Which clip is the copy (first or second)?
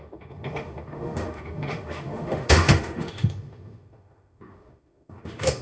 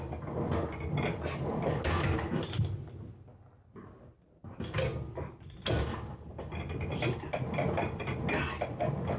first